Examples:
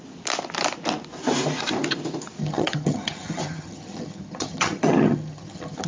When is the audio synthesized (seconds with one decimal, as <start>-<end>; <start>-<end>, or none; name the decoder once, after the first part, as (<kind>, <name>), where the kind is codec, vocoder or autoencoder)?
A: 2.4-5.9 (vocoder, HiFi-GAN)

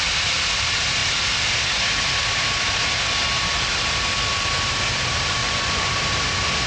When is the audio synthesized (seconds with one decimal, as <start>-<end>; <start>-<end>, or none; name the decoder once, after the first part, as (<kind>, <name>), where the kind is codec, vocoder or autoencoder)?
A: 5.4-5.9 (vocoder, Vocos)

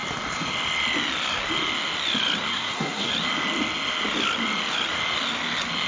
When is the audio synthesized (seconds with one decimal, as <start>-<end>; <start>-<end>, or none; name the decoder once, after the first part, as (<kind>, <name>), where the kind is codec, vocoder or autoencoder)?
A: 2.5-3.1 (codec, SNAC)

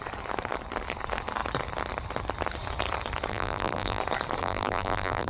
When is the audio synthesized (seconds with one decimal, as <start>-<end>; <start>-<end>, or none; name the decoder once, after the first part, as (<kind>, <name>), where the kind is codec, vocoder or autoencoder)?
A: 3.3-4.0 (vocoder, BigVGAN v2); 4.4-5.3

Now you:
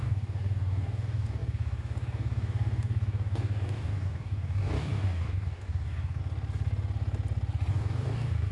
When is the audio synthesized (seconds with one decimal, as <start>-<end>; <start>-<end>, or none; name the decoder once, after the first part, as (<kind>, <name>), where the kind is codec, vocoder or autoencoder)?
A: 0.0-6.2 (codec, DAC); 7.7-8.5

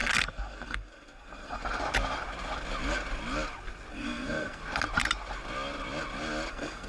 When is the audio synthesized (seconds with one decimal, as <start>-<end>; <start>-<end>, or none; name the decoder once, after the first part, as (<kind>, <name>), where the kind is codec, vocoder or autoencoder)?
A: 0.0-1.6 (codec, SNAC); 3.9-4.6; 6.5-6.9

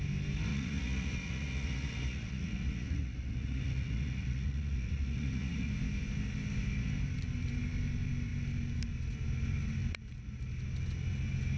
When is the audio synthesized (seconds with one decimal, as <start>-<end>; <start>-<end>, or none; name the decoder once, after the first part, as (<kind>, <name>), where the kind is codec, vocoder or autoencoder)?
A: 0.5-5.7 (vocoder, Vocos)